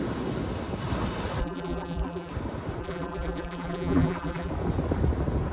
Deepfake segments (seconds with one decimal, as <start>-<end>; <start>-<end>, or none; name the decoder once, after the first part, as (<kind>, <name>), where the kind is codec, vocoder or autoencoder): 1.4-2.3 (vocoder, BigVGAN v2); 2.8-4.5